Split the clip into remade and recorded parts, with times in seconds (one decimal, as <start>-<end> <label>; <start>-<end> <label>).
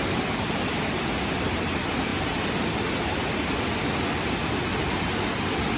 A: 0.0-5.8 recorded